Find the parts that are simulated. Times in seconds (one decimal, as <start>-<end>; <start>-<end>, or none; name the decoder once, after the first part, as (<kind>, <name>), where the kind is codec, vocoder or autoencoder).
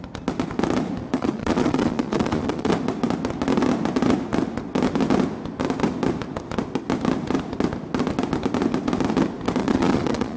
1.0-2.7 (vocoder, Vocos); 9.6-10.4